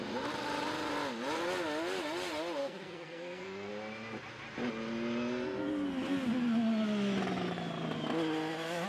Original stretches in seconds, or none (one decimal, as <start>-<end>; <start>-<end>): 0.0-2.6; 3.7-8.9